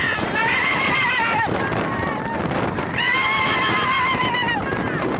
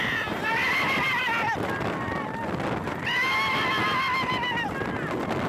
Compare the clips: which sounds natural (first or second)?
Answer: second